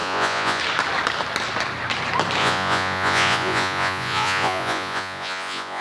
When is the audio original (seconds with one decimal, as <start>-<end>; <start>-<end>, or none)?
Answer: 0.6-2.4